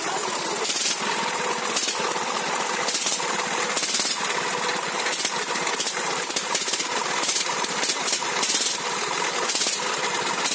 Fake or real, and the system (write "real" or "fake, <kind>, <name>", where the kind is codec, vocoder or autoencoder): real